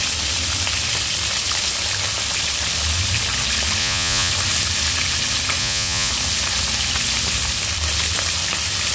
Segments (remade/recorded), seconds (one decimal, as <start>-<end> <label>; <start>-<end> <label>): 0.0-3.8 recorded; 3.8-4.3 remade; 4.3-5.6 recorded; 5.6-6.1 remade; 6.1-8.9 recorded